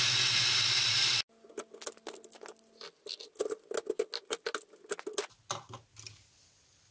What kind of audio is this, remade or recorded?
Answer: recorded